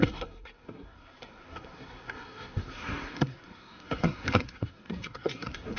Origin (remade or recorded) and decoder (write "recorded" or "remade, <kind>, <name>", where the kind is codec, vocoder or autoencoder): remade, codec, SNAC